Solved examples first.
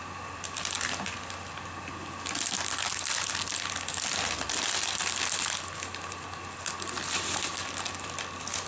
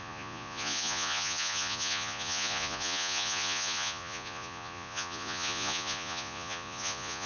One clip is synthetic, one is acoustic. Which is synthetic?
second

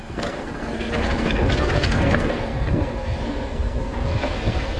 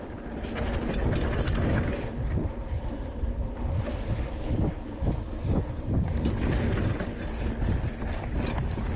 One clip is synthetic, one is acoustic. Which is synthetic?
first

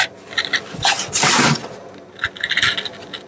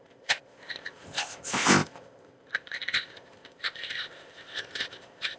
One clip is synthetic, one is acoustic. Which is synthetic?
second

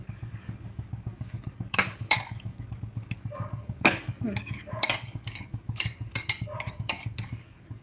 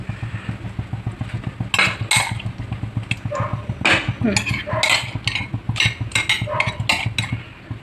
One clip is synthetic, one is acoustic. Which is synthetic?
first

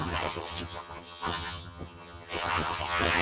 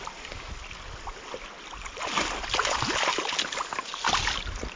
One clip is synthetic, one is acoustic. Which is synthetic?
first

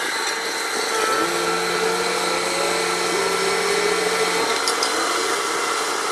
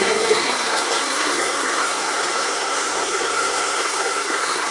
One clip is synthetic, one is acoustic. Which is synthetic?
second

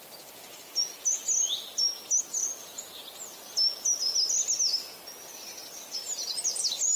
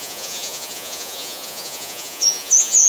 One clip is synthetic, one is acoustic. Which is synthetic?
second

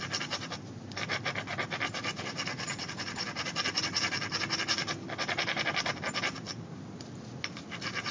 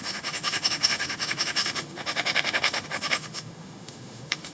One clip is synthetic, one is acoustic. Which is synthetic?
second